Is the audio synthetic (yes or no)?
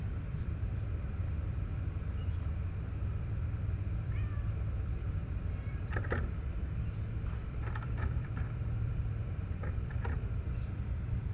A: yes